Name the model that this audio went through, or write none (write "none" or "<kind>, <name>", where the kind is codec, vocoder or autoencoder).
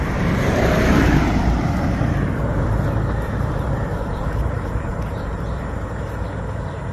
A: vocoder, BigVGAN v2